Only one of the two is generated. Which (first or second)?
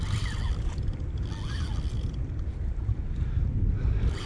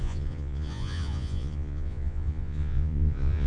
second